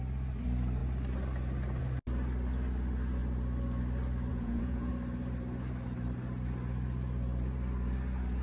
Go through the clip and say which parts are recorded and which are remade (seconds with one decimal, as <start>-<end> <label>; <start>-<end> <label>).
0.0-4.3 recorded; 4.3-4.9 remade; 4.9-8.4 recorded

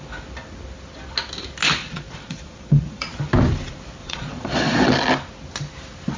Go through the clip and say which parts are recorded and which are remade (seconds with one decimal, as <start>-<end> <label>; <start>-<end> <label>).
0.0-1.8 recorded; 1.8-3.1 remade; 3.1-4.0 recorded; 4.0-4.9 remade; 4.9-6.2 recorded

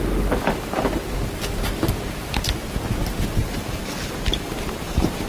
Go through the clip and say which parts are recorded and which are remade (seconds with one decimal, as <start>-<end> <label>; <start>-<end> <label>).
0.0-3.4 recorded; 3.4-5.3 remade

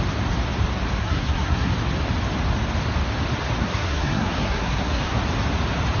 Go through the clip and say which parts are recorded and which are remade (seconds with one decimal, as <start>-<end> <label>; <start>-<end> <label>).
0.0-1.0 recorded; 1.0-1.7 remade; 1.7-3.6 recorded; 3.6-5.2 remade; 5.2-6.0 recorded

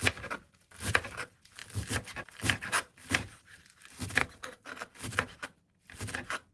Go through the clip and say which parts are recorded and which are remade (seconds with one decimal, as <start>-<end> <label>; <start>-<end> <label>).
0.0-4.2 recorded; 4.2-4.7 remade; 4.7-6.5 recorded

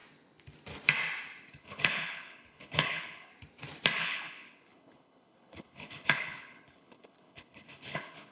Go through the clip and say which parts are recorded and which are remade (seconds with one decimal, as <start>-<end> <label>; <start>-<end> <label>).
0.0-1.5 recorded; 1.5-3.3 remade; 3.3-4.0 recorded; 4.0-8.3 remade

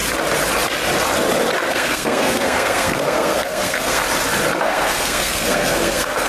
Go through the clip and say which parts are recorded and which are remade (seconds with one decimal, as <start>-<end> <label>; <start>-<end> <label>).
0.0-1.7 recorded; 1.7-4.0 remade; 4.0-4.6 recorded; 4.6-6.3 remade

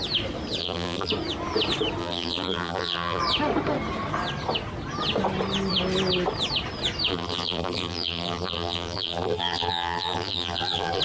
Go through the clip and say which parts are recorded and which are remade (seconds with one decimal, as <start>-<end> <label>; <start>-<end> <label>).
0.0-0.6 recorded; 0.6-1.1 remade; 1.1-2.0 recorded; 2.0-3.2 remade; 3.2-7.1 recorded; 7.1-11.0 remade